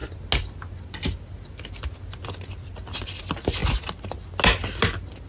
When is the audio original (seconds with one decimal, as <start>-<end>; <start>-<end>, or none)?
0.0-5.3